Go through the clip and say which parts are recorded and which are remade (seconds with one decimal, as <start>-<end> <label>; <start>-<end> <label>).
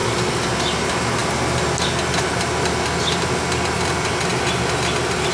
0.0-5.3 recorded